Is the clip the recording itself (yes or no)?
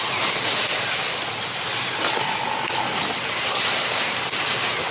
yes